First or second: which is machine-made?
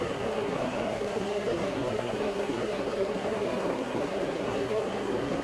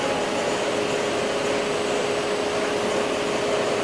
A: first